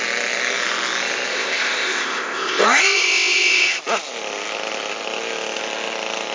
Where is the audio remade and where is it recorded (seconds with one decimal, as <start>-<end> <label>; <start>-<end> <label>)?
0.0-1.3 recorded; 1.3-3.8 remade; 3.8-6.3 recorded